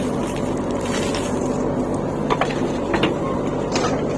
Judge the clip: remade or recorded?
recorded